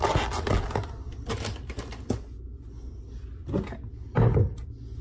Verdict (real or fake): real